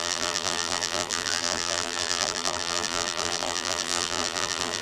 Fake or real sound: fake